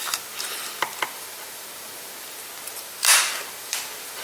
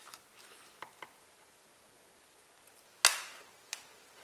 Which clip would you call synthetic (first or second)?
first